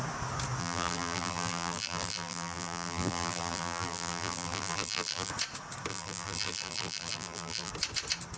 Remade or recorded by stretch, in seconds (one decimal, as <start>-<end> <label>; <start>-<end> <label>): 0.0-0.6 recorded; 0.6-5.3 remade; 5.3-5.9 recorded; 5.9-7.7 remade; 7.7-8.4 recorded